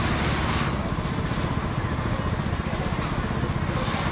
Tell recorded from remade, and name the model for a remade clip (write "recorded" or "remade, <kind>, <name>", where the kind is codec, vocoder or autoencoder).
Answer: recorded